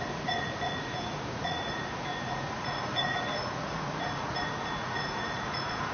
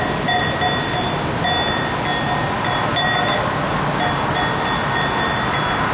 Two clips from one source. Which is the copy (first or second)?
first